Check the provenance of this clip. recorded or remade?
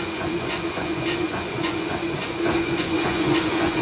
remade